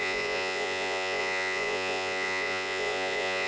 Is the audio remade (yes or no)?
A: yes